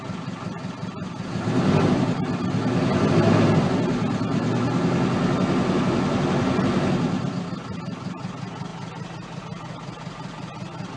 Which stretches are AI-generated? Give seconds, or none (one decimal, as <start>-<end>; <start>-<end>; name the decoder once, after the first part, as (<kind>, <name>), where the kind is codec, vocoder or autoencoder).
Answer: none